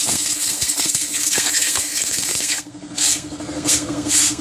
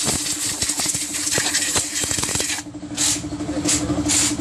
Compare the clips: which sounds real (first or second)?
second